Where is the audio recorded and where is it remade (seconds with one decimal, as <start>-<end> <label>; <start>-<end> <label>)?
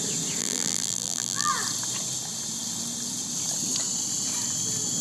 0.0-0.4 recorded; 0.4-1.5 remade; 1.5-5.0 recorded